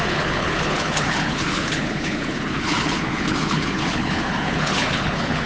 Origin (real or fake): fake